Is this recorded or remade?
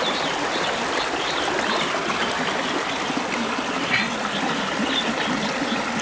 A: recorded